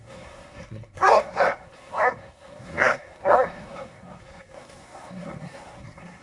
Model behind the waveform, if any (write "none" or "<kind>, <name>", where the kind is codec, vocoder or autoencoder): codec, SNAC